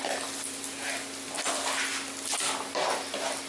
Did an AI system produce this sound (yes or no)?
no